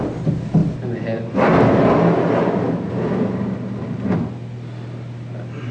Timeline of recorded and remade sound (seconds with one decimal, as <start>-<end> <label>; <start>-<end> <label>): 0.0-5.7 recorded